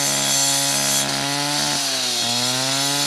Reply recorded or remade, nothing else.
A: recorded